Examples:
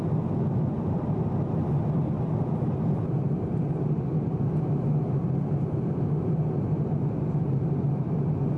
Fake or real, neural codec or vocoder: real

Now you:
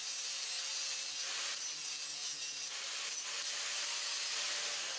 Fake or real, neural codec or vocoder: real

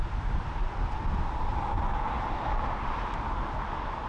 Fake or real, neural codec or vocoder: real